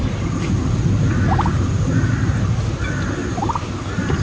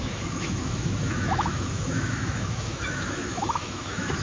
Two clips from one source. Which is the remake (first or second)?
second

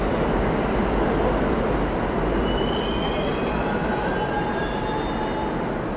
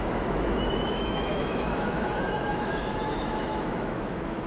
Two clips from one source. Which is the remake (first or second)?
second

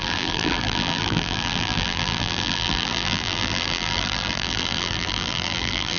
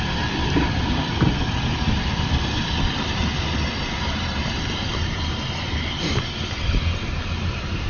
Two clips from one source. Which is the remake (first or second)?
first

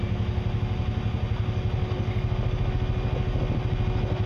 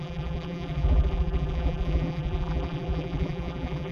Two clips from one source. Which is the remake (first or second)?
second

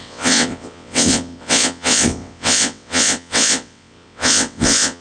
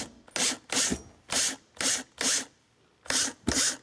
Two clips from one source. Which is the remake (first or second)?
first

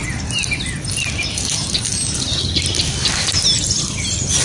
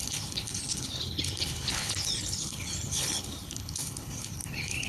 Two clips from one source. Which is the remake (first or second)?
second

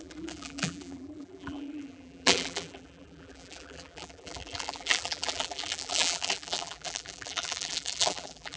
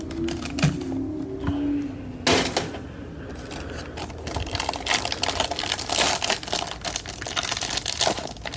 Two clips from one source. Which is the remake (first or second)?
first